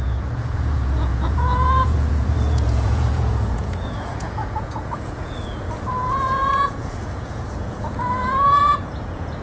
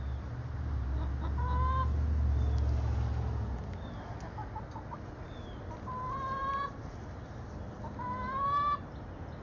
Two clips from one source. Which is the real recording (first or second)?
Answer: second